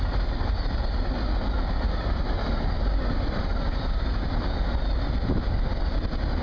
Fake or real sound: real